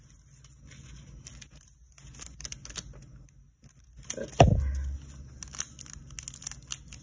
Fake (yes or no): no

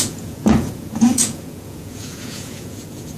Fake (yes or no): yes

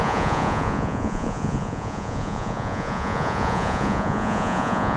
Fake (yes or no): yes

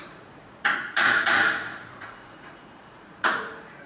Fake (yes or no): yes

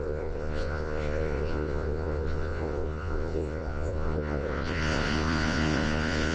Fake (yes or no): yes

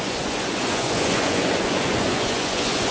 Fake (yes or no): yes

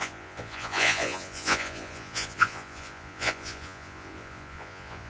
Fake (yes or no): yes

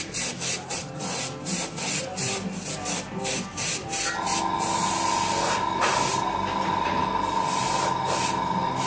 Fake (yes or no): no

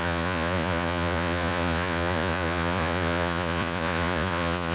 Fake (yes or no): yes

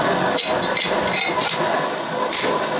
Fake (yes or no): no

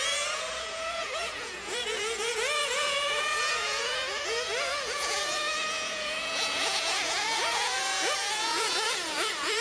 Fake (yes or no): yes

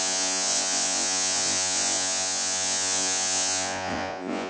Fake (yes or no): yes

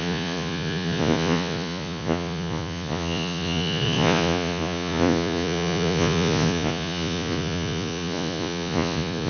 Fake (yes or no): yes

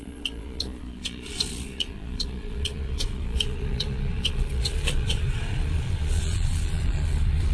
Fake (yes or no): yes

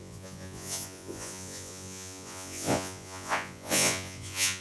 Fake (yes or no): yes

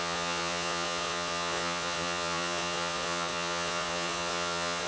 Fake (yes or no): yes